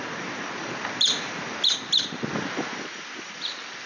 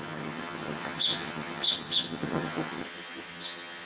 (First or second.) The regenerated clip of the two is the second